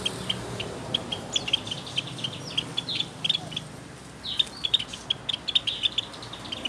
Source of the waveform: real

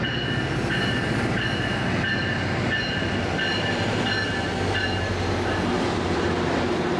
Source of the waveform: real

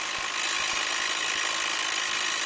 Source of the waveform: real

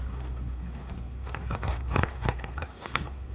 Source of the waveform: fake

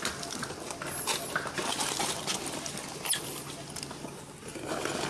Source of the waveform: real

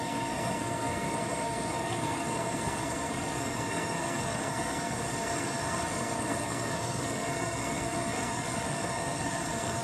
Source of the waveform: fake